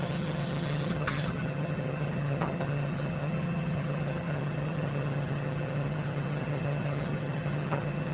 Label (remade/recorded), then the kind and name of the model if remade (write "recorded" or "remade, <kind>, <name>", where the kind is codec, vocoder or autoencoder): remade, vocoder, HiFi-GAN